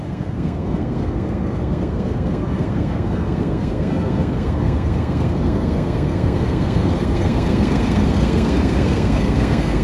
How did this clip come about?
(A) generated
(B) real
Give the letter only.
A